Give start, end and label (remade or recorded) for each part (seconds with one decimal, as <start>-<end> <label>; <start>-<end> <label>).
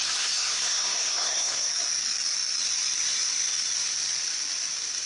0.0-1.7 remade; 1.7-5.1 recorded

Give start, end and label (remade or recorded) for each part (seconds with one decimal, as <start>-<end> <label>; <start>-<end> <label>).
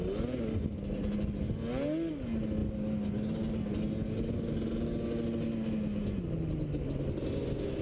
0.0-7.8 recorded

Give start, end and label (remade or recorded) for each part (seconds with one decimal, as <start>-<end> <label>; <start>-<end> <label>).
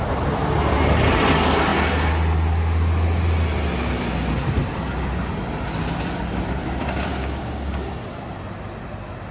0.0-7.1 recorded; 7.1-7.8 remade; 7.8-9.3 recorded